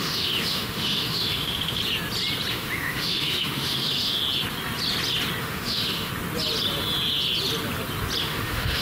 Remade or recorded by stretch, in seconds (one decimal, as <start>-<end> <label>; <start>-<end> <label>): 0.0-1.8 remade; 1.8-2.5 recorded; 2.5-4.2 remade; 4.2-5.4 recorded; 5.4-6.1 remade; 6.1-8.2 recorded; 8.2-8.8 remade

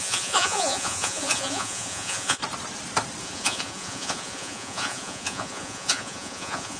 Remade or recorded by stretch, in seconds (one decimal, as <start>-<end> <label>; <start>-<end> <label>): 0.0-2.4 remade; 2.4-3.2 recorded; 3.2-6.8 remade

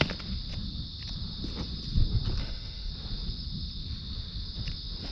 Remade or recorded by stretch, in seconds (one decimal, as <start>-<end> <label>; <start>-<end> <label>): 0.0-2.4 recorded; 2.4-2.9 remade; 2.9-5.1 recorded

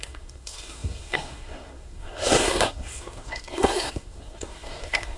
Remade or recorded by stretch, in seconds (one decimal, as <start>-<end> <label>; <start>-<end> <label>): 0.0-5.2 remade

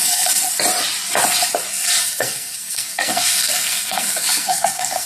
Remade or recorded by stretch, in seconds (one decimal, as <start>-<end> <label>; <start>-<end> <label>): 0.0-0.5 remade; 0.5-1.7 recorded; 1.7-5.1 remade

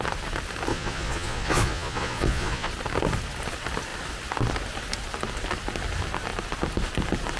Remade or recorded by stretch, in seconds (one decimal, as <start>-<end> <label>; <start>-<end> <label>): 0.0-0.7 recorded; 0.7-2.7 remade; 2.7-7.4 recorded

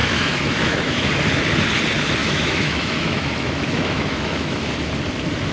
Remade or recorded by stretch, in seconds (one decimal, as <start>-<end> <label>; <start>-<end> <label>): 0.0-1.1 remade; 1.1-2.2 recorded; 2.2-4.7 remade; 4.7-5.5 recorded